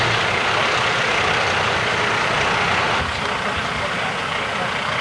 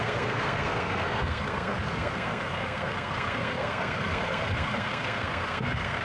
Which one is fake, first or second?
second